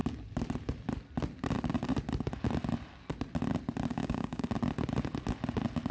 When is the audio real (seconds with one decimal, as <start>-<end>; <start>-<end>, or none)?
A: 0.0-3.9; 4.5-5.9

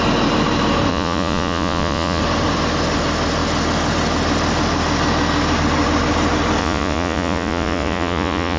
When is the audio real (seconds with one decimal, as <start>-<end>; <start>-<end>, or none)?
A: 0.0-0.9; 2.2-6.6

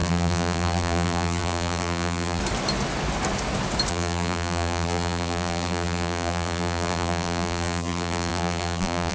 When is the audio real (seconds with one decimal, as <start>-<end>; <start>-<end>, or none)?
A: 2.4-3.9

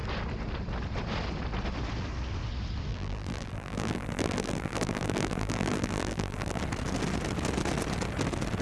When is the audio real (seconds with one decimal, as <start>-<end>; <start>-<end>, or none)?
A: 0.0-2.9; 6.6-8.6

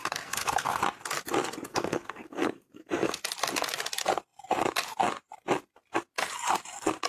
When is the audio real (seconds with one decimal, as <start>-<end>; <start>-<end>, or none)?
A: 0.8-1.7; 3.2-7.1

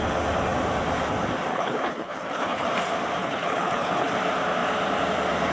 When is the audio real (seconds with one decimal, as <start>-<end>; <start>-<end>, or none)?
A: 0.0-1.5; 2.7-3.2; 4.1-5.5